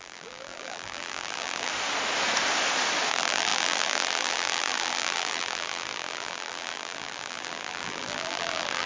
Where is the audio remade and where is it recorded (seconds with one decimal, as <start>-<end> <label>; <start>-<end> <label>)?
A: 0.0-1.7 remade; 1.7-3.1 recorded; 3.1-8.9 remade